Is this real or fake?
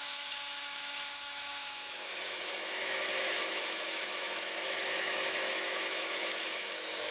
fake